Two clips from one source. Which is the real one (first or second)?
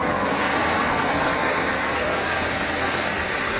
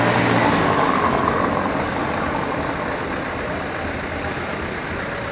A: second